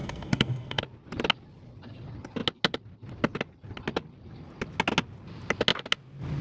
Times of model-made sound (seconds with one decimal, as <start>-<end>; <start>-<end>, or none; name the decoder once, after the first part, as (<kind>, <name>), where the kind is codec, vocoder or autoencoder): 0.0-0.8 (codec, SNAC)